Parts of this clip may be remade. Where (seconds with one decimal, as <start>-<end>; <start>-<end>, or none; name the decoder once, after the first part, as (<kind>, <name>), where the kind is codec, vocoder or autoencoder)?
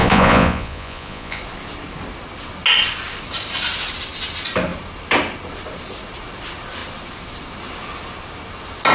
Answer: 0.0-1.4 (vocoder, Vocos)